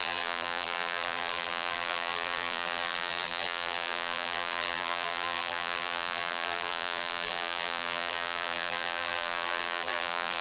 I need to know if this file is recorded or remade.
remade